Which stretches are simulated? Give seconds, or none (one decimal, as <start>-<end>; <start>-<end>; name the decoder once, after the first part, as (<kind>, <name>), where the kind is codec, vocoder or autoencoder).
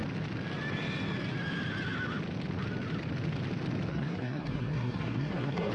3.9-5.7 (codec, SNAC)